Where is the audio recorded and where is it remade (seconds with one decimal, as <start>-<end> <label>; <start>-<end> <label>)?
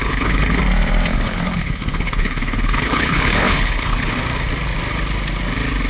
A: 0.0-0.6 remade; 0.6-1.1 recorded; 1.1-4.2 remade; 4.2-5.9 recorded